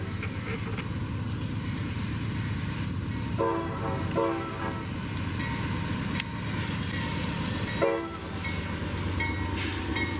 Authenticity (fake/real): real